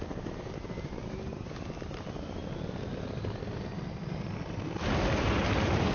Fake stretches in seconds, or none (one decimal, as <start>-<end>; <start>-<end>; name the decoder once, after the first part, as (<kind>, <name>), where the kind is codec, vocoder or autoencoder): none